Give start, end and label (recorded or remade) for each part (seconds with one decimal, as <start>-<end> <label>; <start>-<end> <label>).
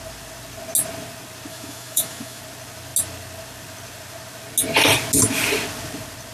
0.0-1.5 recorded; 1.5-2.4 remade; 2.4-6.3 recorded